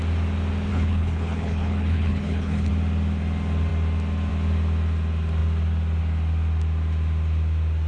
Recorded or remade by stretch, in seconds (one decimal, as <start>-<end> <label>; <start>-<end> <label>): 0.0-0.7 recorded; 0.7-2.7 remade; 2.7-7.9 recorded